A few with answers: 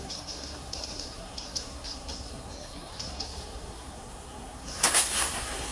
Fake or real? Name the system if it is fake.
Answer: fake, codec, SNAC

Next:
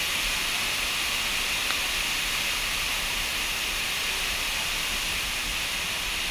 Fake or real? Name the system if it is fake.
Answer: real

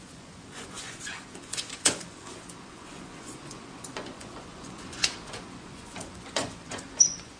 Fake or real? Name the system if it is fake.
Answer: fake, vocoder, Vocos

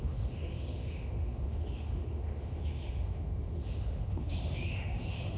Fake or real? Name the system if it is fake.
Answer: fake, autoencoder, DAC-VAE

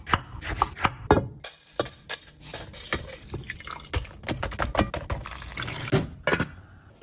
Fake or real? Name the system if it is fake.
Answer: real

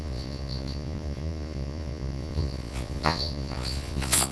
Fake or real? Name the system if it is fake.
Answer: fake, vocoder, Vocos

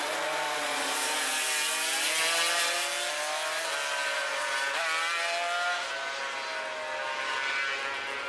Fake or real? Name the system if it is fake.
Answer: real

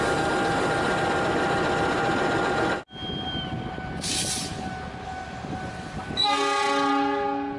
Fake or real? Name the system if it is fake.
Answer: real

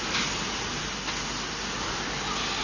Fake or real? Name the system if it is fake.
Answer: real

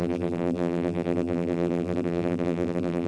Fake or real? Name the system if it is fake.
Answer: fake, vocoder, BigVGAN v2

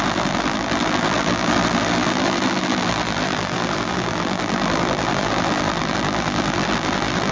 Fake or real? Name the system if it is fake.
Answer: fake, vocoder, BigVGAN v2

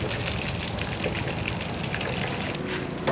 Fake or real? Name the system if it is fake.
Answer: real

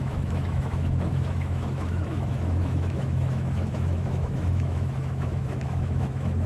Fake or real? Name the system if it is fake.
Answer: fake, autoencoder, DAC-VAE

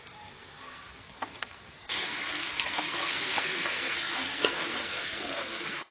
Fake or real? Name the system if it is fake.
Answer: fake, codec, SNAC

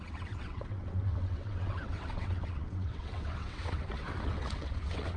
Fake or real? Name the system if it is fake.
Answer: fake, vocoder, WaveNeXt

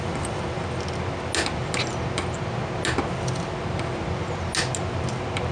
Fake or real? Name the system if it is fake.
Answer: real